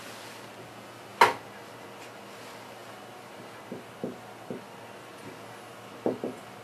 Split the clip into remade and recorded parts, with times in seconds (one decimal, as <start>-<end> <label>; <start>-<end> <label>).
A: 0.0-6.6 recorded